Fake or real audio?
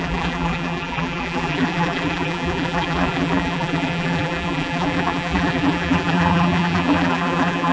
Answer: fake